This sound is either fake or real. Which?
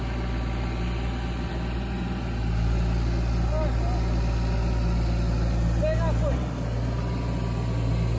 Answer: real